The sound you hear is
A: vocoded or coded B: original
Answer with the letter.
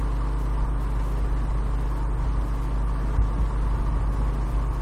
B